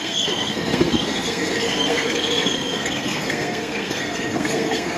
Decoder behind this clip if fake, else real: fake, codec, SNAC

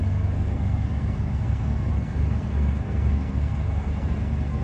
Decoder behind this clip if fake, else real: fake, codec, SNAC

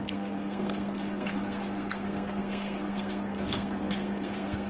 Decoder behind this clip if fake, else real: fake, codec, SNAC